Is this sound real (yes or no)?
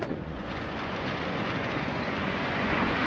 no